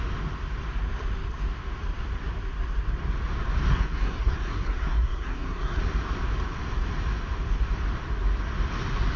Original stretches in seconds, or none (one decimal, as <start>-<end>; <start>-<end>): 0.0-3.7; 5.8-9.2